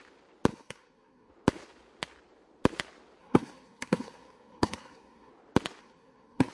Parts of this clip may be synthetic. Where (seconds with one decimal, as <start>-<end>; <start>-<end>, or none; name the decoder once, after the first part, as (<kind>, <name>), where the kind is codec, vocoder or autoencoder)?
0.5-1.3 (codec, SNAC); 3.2-5.3; 5.8-6.5